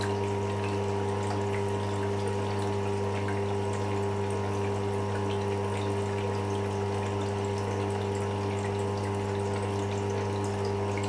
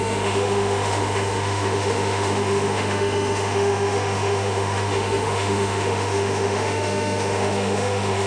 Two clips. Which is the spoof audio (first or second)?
second